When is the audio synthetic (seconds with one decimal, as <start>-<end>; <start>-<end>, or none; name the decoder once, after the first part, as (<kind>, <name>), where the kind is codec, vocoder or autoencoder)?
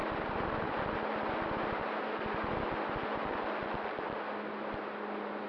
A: none